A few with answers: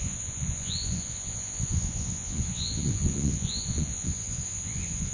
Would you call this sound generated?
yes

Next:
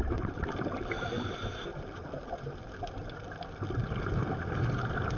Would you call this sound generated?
no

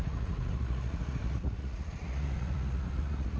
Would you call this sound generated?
yes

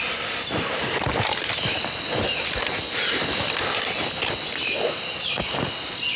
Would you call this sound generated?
no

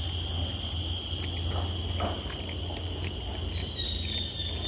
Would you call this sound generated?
no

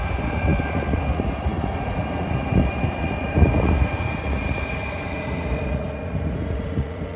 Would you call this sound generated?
yes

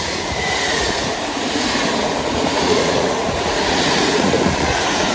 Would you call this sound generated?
yes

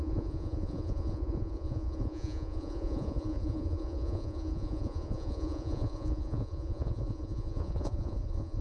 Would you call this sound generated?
yes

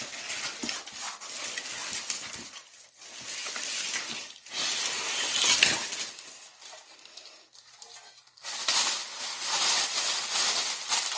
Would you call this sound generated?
no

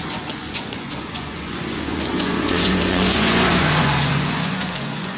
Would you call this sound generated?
yes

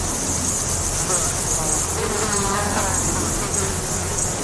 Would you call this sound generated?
no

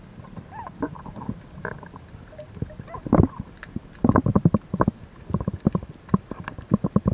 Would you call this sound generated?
no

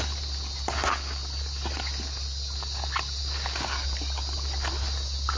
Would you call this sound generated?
no